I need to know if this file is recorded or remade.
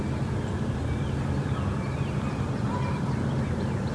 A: recorded